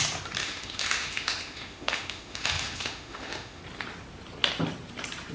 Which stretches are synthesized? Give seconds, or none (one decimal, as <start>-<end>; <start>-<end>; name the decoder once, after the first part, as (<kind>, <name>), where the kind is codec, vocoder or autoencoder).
0.4-3.6 (autoencoder, DAC-VAE)